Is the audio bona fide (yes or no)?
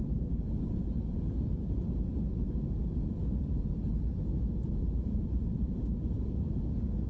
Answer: no